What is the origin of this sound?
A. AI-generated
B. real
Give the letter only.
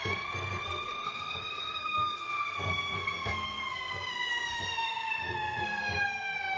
A